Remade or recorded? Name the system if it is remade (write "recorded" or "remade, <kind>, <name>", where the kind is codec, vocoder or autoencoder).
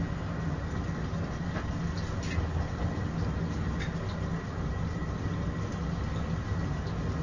recorded